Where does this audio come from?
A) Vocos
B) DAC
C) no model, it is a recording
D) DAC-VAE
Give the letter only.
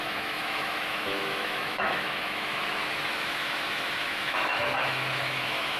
D